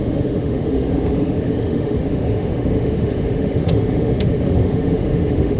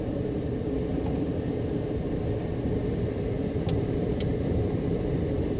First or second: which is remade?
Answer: first